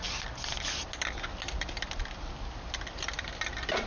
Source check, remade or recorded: recorded